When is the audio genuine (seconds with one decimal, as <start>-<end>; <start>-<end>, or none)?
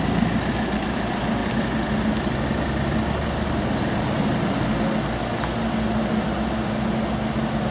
0.0-7.7